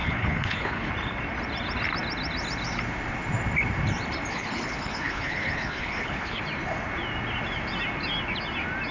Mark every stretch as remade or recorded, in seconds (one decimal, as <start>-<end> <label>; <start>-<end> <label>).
0.0-0.9 remade; 0.9-4.3 recorded; 4.3-6.4 remade; 6.4-8.9 recorded